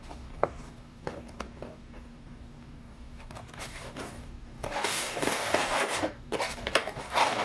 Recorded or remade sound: remade